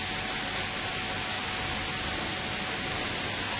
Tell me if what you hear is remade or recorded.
recorded